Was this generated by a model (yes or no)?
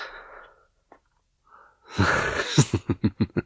no